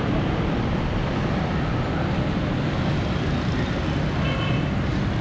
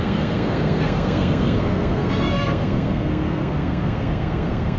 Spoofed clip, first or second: second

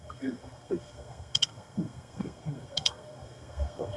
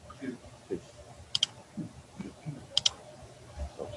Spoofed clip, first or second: first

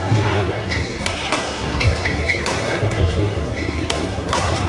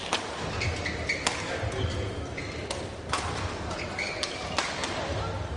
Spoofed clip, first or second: first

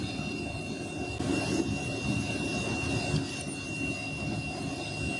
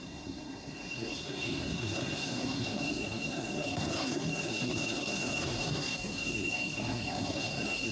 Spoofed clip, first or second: second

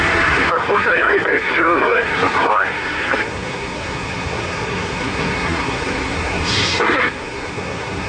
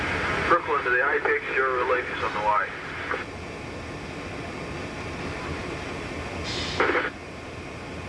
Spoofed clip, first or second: first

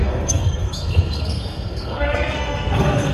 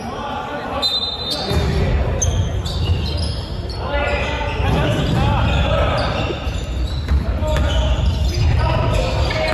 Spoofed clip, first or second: first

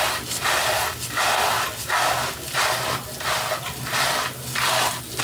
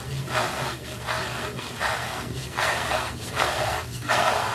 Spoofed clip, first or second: second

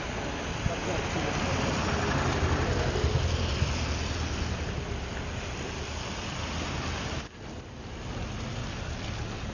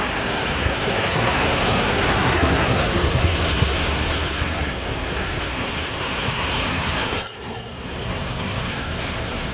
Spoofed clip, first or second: second